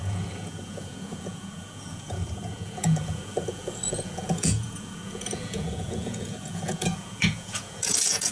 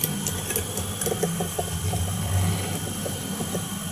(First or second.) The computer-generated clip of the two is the first